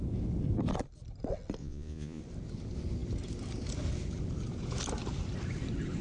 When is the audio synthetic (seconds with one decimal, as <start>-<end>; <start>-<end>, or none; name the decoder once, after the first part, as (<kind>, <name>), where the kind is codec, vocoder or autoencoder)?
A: 1.6-2.2 (vocoder, Vocos)